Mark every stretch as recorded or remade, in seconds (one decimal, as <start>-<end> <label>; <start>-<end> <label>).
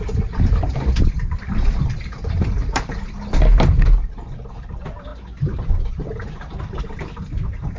0.0-0.7 recorded; 0.7-4.1 remade; 4.1-5.1 recorded; 5.1-6.8 remade; 6.8-7.8 recorded